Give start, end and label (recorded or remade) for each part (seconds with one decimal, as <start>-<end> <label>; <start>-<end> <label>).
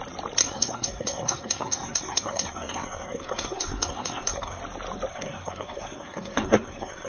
0.0-0.4 recorded; 0.4-4.6 remade; 4.6-5.1 recorded; 5.1-7.1 remade